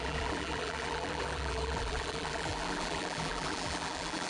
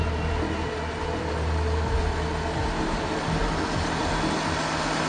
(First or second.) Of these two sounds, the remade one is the first